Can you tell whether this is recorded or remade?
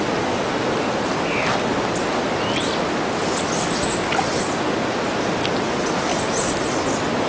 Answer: recorded